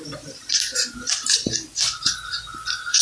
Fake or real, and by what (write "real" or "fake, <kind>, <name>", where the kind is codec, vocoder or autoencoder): real